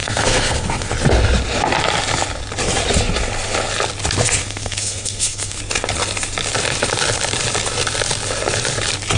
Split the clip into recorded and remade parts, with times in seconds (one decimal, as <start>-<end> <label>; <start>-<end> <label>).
0.0-0.9 remade; 0.9-4.4 recorded; 4.4-5.6 remade; 5.6-9.2 recorded